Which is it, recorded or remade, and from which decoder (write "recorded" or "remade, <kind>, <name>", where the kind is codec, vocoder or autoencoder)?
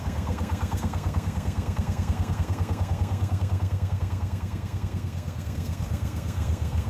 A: remade, codec, SNAC